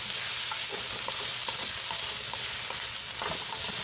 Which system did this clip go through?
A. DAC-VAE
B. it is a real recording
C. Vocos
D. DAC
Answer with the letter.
B